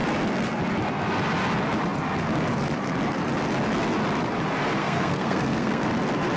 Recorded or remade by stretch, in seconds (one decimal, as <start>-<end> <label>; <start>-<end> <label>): 0.0-4.8 recorded; 4.8-5.9 remade; 5.9-6.4 recorded